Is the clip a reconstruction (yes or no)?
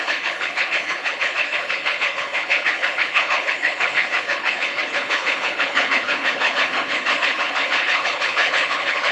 yes